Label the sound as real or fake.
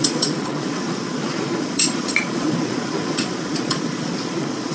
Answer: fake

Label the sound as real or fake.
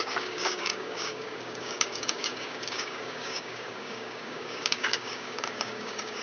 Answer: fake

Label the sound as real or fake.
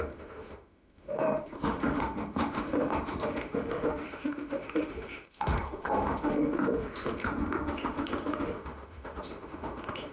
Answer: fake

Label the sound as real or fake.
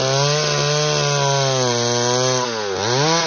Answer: real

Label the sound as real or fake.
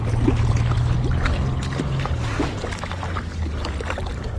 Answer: real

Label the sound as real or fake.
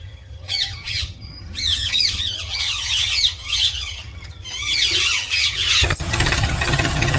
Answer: fake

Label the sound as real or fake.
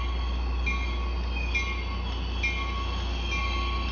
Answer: real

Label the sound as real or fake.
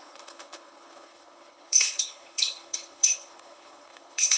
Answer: fake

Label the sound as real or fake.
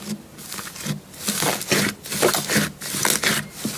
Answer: real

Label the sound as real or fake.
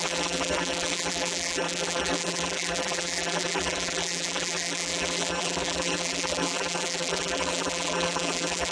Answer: fake